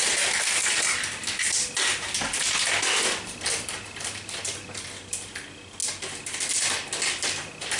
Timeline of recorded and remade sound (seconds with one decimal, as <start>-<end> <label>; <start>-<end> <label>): 0.0-7.8 recorded